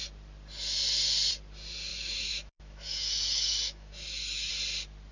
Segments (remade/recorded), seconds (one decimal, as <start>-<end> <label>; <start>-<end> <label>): 0.0-1.9 recorded; 1.9-4.5 remade; 4.5-5.1 recorded